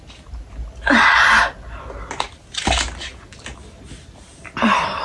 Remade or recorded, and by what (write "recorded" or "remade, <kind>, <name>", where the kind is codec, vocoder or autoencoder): recorded